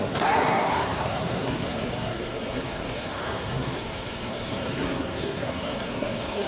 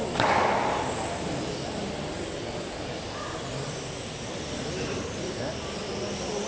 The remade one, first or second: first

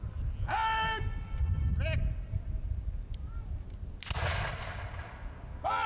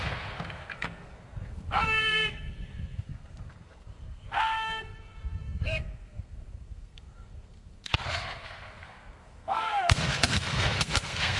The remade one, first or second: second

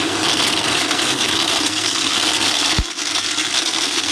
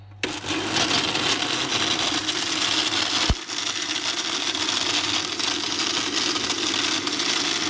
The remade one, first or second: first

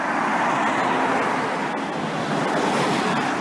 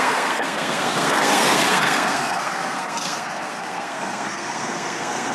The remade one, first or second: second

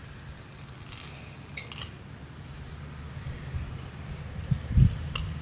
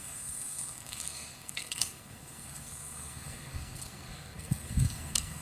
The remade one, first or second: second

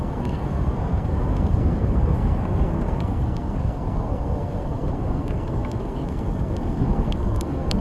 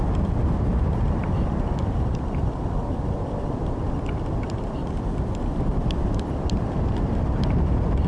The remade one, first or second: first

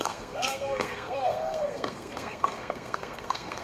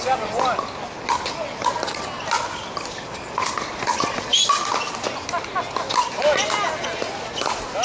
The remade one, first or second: first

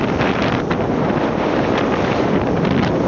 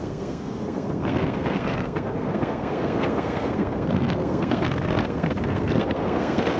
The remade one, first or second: second